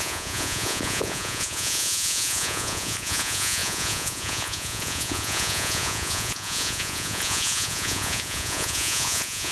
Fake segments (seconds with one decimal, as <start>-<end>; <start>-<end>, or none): 0.0-9.5